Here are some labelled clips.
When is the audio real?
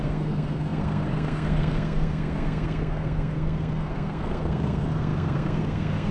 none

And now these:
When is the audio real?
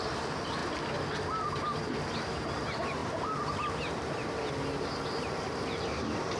0.6-1.8; 3.0-3.8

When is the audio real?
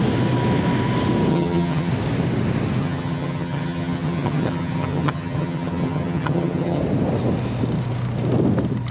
0.0-1.3; 1.9-2.8; 6.8-8.9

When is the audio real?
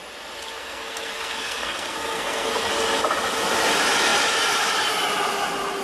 0.0-0.6; 2.7-5.8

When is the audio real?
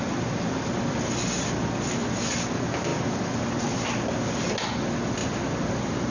0.0-6.1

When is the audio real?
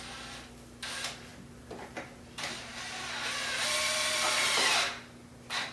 0.0-5.7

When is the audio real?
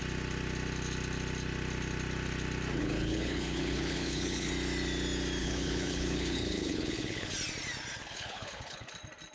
0.0-2.8; 4.5-5.4; 7.3-8.0; 8.9-9.3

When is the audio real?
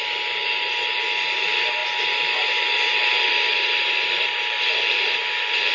none